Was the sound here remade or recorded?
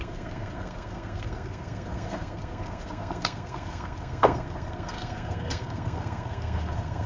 remade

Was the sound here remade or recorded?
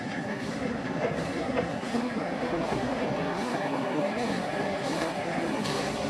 remade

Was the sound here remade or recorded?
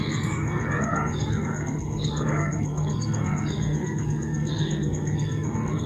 remade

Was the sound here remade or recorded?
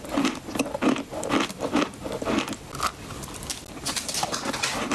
recorded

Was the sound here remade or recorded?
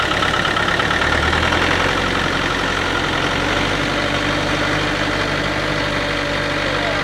recorded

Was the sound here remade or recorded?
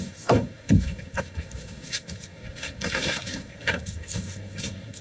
remade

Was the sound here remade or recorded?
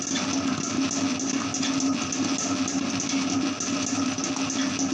recorded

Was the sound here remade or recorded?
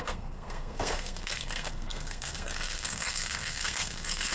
remade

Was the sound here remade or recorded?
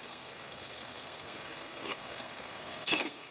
remade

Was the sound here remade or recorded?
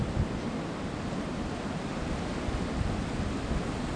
recorded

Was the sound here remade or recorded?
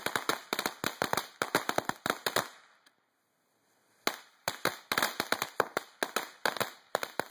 recorded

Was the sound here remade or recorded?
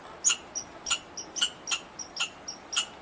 recorded